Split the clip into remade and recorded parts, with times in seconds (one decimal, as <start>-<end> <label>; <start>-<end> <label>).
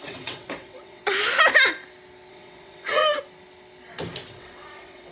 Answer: 0.0-1.0 remade; 1.0-2.3 recorded; 2.3-3.0 remade; 3.0-4.3 recorded; 4.3-5.1 remade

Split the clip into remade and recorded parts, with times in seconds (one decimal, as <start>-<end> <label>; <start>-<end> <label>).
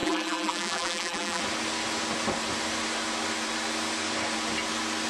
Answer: 0.0-1.4 remade; 1.4-5.1 recorded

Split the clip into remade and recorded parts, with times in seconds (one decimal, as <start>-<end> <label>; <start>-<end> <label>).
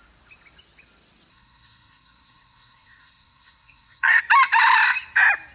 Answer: 0.0-1.3 recorded; 1.3-4.2 remade; 4.2-5.5 recorded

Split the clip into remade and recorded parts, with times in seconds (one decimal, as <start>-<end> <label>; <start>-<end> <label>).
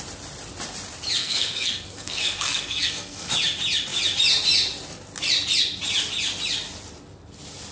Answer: 0.0-1.2 recorded; 1.2-3.3 remade; 3.3-7.7 recorded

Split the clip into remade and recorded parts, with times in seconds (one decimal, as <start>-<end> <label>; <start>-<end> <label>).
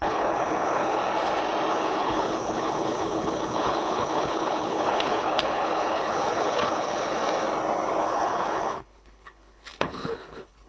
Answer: 0.0-1.0 remade; 1.0-1.7 recorded; 1.7-7.2 remade; 7.2-8.0 recorded; 8.0-10.7 remade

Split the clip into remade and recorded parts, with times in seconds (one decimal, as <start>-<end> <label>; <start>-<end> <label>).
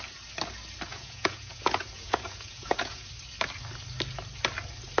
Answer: 0.0-0.9 recorded; 0.9-3.1 remade; 3.1-5.0 recorded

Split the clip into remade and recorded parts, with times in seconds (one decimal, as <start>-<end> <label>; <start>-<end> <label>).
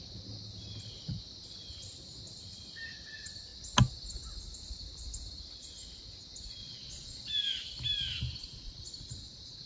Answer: 0.0-6.6 recorded; 6.6-7.3 remade; 7.3-8.4 recorded; 8.4-9.7 remade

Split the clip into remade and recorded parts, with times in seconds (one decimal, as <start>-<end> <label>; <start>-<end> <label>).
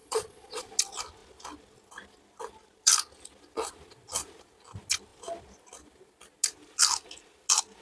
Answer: 0.0-0.6 remade; 0.6-7.8 recorded